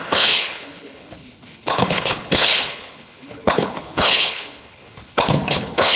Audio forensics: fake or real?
fake